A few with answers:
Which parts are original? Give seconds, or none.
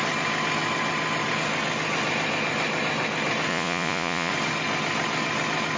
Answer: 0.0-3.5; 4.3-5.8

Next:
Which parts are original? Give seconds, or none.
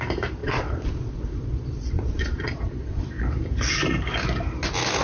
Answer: 0.0-0.4; 3.0-5.0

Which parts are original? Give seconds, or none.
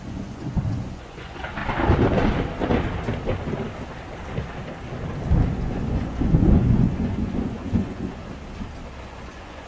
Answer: 1.6-5.5; 8.2-9.0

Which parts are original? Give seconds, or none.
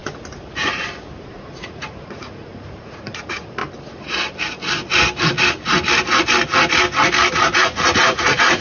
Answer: 0.0-1.3; 3.6-7.3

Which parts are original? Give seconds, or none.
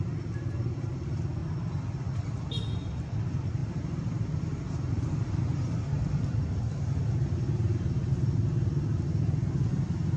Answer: 0.0-10.2